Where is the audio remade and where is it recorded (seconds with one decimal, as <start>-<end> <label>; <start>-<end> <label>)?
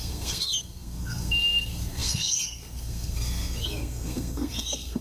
0.0-5.0 remade